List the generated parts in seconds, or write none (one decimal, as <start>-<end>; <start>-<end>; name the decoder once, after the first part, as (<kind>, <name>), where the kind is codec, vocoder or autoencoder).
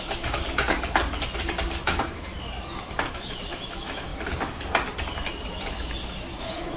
0.0-0.4 (autoencoder, DAC-VAE); 1.8-2.3; 3.1-4.1; 5.5-6.8